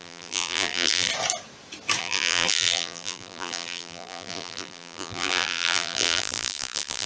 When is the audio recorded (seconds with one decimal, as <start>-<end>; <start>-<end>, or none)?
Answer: 1.1-2.0